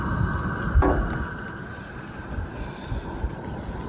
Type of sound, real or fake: real